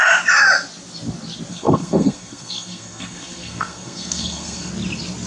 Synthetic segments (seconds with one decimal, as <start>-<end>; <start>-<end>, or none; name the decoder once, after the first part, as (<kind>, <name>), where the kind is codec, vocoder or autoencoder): 1.5-4.7 (codec, SNAC)